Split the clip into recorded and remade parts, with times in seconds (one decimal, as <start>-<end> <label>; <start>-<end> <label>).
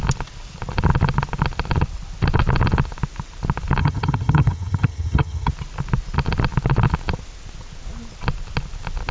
0.0-3.8 recorded; 3.8-5.5 remade; 5.5-9.1 recorded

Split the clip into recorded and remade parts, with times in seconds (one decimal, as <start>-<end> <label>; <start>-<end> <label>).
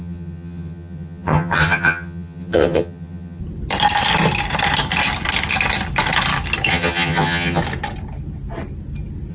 0.0-3.4 remade; 3.4-6.7 recorded; 6.7-7.6 remade; 7.6-9.3 recorded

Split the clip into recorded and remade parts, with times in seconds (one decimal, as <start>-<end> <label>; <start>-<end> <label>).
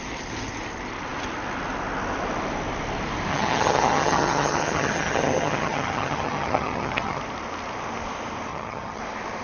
0.0-3.3 recorded; 3.3-7.2 remade; 7.2-8.5 recorded; 8.5-9.0 remade; 9.0-9.4 recorded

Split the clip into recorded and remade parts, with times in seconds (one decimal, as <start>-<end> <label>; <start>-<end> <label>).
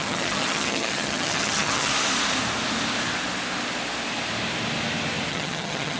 0.0-1.9 remade; 1.9-5.3 recorded; 5.3-6.0 remade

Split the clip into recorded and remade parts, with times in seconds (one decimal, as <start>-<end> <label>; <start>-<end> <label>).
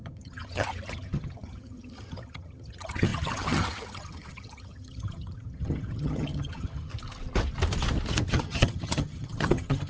0.0-6.9 remade; 6.9-8.3 recorded; 8.3-9.9 remade